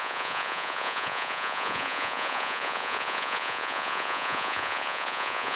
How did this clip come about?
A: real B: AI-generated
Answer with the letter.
B